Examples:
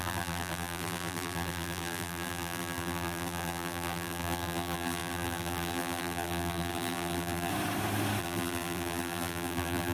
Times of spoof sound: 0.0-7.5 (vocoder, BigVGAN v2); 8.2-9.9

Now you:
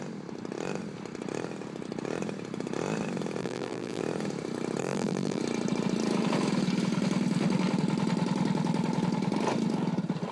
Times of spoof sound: 3.4-4.0 (vocoder, BigVGAN v2); 4.8-5.4

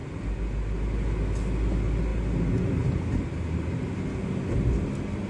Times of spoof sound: none

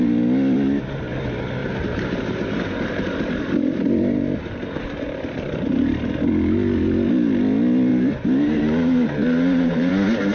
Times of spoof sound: 1.6-6.2 (vocoder, BigVGAN v2); 7.9-9.9

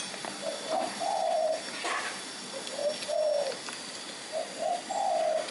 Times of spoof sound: 0.5-1.5 (vocoder, BigVGAN v2)